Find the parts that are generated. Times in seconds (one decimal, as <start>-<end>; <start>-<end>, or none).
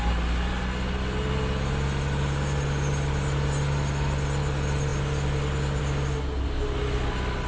none